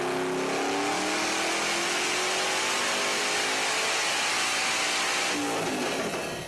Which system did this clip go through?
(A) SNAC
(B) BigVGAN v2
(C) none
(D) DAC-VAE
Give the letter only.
C